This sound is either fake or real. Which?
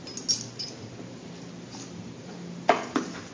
real